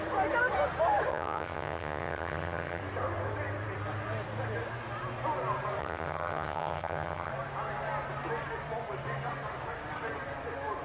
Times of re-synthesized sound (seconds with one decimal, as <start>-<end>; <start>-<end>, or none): 1.1-2.8; 5.8-7.3